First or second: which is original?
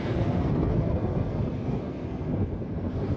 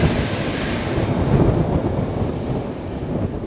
second